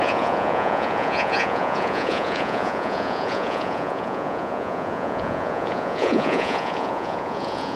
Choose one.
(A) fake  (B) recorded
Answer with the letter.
A